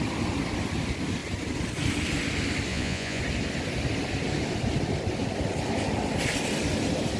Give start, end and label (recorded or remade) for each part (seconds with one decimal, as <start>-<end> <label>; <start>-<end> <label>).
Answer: 0.0-2.7 recorded; 2.7-3.2 remade; 3.2-7.2 recorded